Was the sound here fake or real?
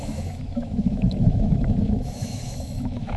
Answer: fake